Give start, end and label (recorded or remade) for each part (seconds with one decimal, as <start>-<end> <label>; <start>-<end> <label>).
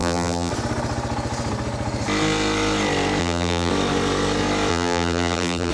0.0-0.5 remade; 0.5-3.2 recorded; 3.2-3.7 remade; 3.7-4.7 recorded; 4.7-5.7 remade